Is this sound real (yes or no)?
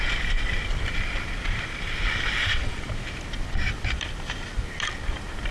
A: yes